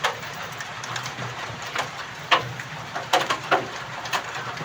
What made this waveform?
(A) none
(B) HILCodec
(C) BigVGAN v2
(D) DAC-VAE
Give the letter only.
C